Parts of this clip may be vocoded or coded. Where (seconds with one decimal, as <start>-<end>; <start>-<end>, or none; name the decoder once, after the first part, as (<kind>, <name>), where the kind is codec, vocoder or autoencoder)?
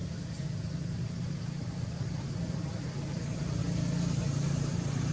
none